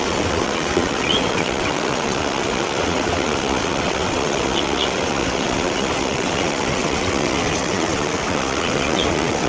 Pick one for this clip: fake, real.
fake